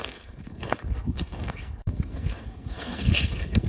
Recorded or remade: remade